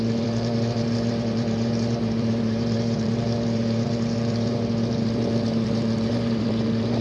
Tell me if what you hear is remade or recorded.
remade